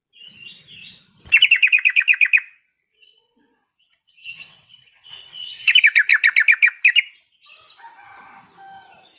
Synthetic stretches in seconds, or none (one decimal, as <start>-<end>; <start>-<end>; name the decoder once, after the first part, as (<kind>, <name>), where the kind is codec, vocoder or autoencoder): 2.9-5.7 (vocoder, WaveNeXt)